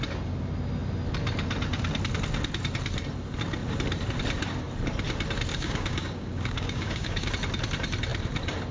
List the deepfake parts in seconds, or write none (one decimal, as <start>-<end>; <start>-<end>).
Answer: 5.5-7.3

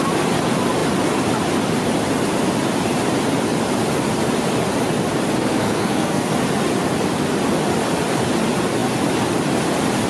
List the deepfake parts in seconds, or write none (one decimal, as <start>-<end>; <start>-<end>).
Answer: 5.5-6.3

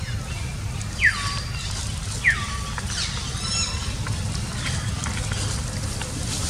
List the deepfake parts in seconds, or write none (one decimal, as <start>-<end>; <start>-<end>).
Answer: none

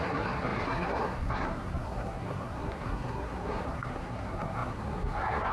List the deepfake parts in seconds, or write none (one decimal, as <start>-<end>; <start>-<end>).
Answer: 0.0-5.5